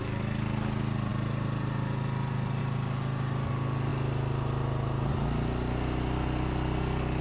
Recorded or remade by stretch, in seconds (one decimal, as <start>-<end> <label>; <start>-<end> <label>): 0.0-7.2 recorded